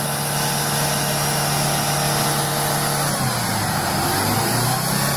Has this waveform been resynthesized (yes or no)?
no